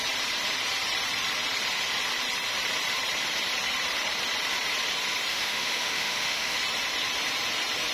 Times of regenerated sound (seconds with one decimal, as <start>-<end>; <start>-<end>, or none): 5.3-6.6